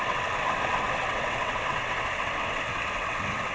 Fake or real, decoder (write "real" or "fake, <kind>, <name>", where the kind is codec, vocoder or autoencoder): fake, vocoder, WaveNeXt